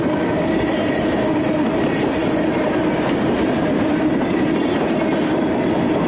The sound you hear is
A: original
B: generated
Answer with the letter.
A